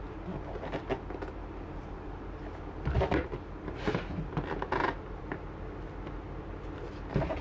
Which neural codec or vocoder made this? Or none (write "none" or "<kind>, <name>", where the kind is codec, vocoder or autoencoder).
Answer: none